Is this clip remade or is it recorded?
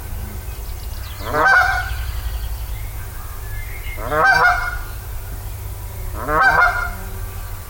recorded